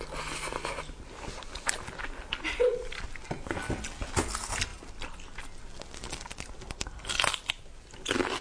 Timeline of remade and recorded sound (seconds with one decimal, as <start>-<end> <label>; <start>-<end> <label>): 0.0-8.4 recorded